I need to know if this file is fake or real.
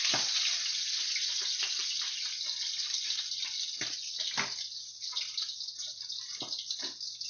real